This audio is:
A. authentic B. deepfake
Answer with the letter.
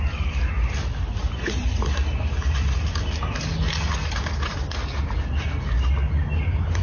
A